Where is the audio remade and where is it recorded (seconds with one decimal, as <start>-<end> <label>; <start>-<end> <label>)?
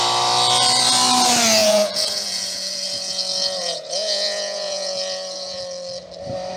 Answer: 0.0-1.6 recorded; 1.6-5.6 remade; 5.6-6.6 recorded